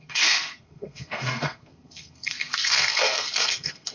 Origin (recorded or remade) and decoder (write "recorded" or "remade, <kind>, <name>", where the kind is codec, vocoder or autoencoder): remade, codec, SNAC